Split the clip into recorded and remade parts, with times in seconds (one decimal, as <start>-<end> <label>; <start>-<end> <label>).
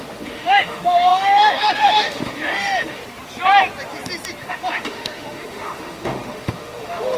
0.0-3.0 remade; 3.0-4.4 recorded; 4.4-7.2 remade